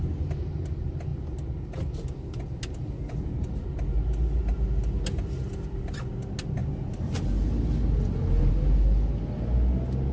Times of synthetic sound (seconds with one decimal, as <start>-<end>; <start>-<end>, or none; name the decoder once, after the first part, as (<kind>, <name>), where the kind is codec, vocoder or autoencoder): none